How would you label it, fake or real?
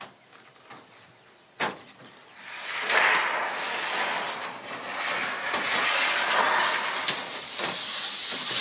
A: real